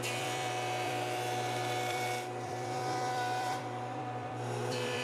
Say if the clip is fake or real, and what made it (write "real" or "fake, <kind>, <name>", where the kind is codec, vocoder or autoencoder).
fake, vocoder, BigVGAN v2